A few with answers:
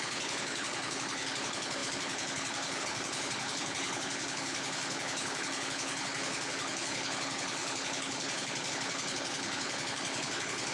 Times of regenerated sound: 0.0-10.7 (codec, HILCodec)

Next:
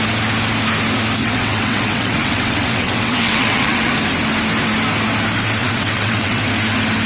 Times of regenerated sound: 1.2-3.9 (vocoder, WaveNeXt); 5.6-6.4